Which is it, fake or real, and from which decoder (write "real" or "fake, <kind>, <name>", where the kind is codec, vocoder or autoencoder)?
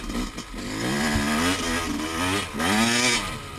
real